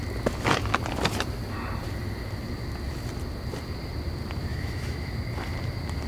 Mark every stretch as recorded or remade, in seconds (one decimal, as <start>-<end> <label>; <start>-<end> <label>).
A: 0.0-4.5 recorded; 4.5-5.1 remade; 5.1-6.1 recorded